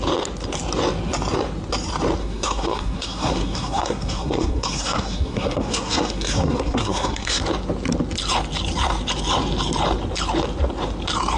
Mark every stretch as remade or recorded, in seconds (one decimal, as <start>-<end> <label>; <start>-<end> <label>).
0.0-2.2 recorded; 2.2-7.4 remade; 7.4-11.4 recorded

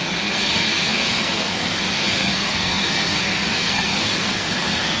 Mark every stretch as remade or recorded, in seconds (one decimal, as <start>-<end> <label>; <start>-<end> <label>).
0.0-5.0 remade

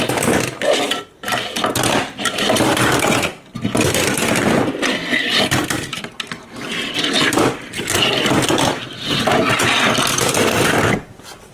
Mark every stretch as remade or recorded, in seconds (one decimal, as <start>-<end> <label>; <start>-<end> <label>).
0.0-11.5 recorded

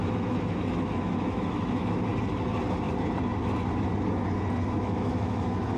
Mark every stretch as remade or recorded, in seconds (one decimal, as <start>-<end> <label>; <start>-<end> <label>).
0.0-2.1 remade; 2.1-4.6 recorded; 4.6-5.8 remade

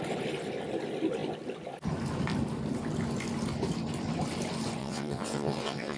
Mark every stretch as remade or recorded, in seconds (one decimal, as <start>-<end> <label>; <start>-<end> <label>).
0.0-4.8 recorded; 4.8-6.0 remade

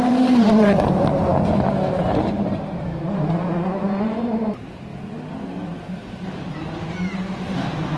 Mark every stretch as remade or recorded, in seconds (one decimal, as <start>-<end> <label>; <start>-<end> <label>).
0.0-1.3 remade; 1.3-2.0 recorded; 2.0-4.9 remade; 4.9-5.9 recorded; 5.9-8.0 remade

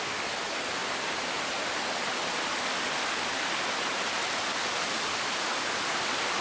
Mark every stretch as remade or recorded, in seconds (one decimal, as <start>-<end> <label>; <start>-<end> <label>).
0.0-6.4 recorded

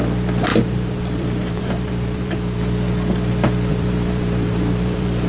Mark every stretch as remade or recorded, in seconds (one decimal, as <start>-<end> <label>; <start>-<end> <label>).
0.0-0.5 recorded; 0.5-2.6 remade; 2.6-3.7 recorded; 3.7-5.3 remade